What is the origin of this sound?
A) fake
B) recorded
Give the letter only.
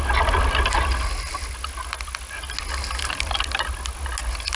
B